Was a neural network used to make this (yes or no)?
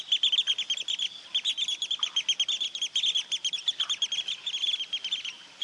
no